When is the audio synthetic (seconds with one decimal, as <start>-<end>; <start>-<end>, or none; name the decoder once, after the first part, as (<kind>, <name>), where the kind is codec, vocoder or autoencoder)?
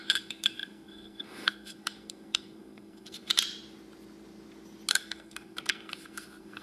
0.0-3.3 (codec, SNAC); 4.9-6.6